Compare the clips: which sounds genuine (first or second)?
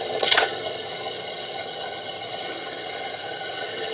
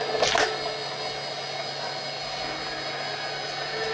second